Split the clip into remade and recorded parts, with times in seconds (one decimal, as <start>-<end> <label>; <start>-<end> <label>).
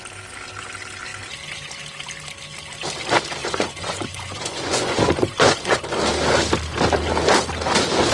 0.0-3.4 recorded; 3.4-5.8 remade; 5.8-8.1 recorded